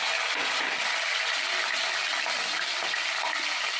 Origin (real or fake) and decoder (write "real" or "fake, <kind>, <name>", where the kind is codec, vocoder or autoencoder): real